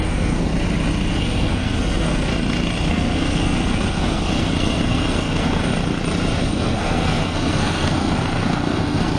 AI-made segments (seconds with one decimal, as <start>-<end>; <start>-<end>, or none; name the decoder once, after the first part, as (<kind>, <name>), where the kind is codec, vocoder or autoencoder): 0.0-0.5 (codec, SNAC); 1.1-2.3; 2.9-5.7; 6.4-9.2